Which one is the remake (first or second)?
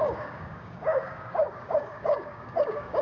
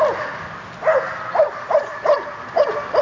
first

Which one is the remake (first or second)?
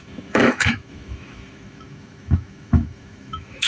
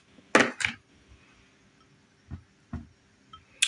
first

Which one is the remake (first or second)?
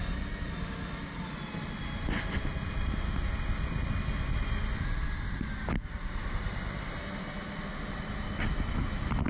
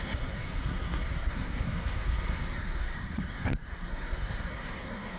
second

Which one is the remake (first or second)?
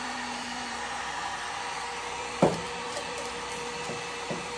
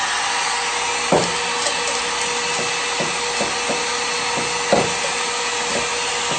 first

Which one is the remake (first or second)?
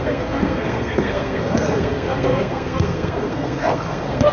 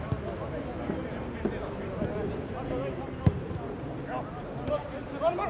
first